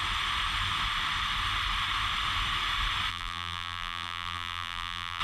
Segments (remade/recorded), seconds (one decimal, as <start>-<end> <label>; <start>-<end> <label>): 0.0-3.1 recorded; 3.1-5.2 remade